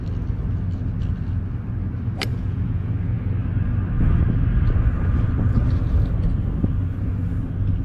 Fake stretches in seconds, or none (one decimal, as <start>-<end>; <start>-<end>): 2.3-2.9